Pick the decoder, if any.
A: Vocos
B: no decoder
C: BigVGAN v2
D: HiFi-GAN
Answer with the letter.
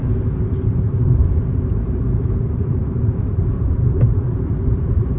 C